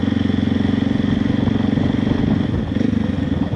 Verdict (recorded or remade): recorded